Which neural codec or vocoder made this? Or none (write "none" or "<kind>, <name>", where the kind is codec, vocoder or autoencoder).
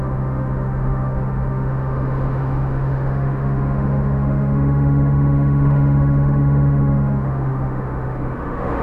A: autoencoder, DAC-VAE